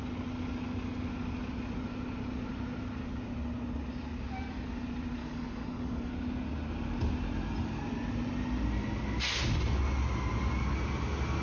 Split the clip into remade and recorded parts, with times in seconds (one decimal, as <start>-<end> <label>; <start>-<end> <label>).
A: 0.0-5.2 recorded; 5.2-6.1 remade; 6.1-11.4 recorded